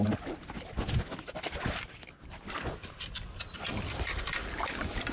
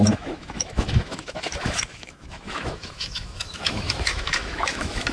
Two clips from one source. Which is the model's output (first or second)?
second